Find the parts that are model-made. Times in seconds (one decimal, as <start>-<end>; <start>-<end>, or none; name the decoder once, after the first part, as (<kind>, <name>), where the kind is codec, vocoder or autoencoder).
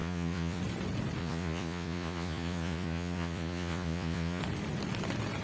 0.0-0.6 (vocoder, Vocos); 1.2-4.4